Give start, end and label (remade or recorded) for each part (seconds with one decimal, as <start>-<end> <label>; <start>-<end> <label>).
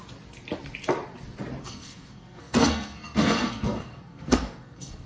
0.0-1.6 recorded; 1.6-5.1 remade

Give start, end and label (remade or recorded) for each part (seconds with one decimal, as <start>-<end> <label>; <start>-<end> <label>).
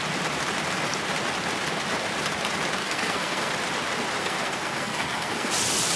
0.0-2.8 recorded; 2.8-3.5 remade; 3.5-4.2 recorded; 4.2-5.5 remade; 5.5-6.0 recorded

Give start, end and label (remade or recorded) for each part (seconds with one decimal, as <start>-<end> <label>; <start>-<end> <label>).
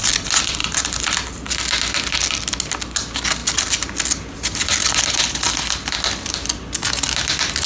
0.0-7.7 recorded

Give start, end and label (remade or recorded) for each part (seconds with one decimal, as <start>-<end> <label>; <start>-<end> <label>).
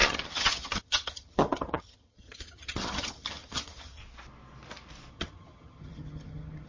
0.0-4.0 remade; 4.0-5.1 recorded; 5.1-6.7 remade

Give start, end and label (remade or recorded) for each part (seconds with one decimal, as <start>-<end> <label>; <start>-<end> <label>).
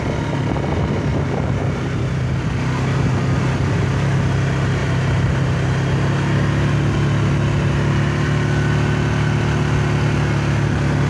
0.0-1.1 recorded; 1.1-2.4 remade; 2.4-4.8 recorded; 4.8-5.4 remade; 5.4-11.1 recorded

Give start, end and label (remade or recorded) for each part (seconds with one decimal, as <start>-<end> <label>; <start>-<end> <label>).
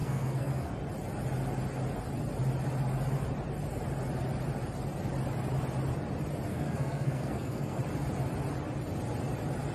0.0-0.7 remade; 0.7-6.5 recorded; 6.5-7.8 remade; 7.8-9.7 recorded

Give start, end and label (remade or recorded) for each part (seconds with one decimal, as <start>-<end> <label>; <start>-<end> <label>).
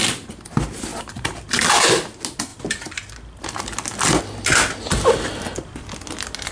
0.0-0.9 recorded; 0.9-1.5 remade; 1.5-6.5 recorded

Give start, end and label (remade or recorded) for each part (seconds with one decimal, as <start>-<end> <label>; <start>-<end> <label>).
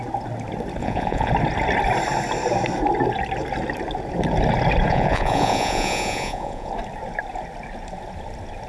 0.0-0.8 recorded; 0.8-1.3 remade; 1.3-4.9 recorded; 4.9-6.7 remade; 6.7-8.7 recorded